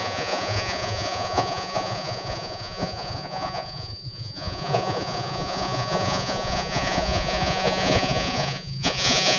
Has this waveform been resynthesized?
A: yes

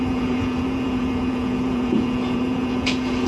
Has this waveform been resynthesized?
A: yes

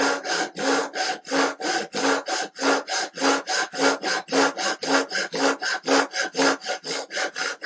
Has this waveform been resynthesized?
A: no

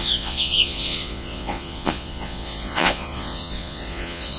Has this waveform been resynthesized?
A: yes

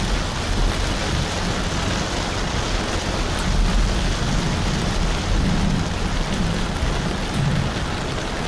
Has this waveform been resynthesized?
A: no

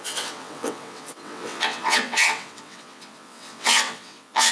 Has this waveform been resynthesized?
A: yes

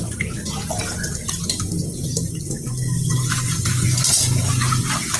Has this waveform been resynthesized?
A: no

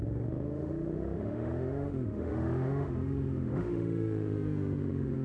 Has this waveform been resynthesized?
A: yes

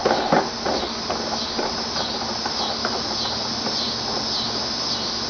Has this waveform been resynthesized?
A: no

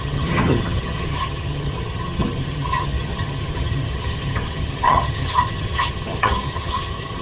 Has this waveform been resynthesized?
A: yes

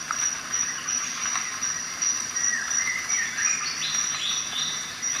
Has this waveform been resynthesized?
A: no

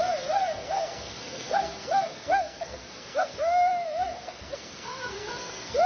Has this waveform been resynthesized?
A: yes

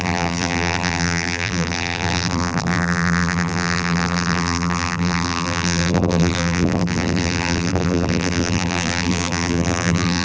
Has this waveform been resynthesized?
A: yes